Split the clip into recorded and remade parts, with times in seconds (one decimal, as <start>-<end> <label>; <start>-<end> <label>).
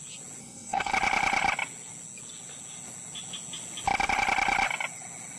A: 0.0-0.4 recorded; 0.4-0.9 remade; 0.9-5.4 recorded